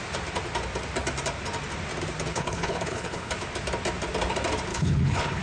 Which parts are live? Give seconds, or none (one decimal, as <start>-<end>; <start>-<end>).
0.0-2.3; 3.3-4.7